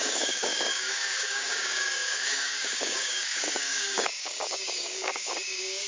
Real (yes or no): no